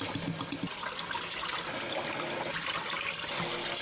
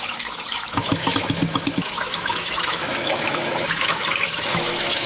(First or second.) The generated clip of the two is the second